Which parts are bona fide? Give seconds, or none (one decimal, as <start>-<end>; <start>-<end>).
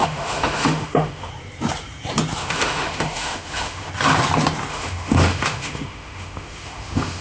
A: 1.3-2.4; 3.9-4.7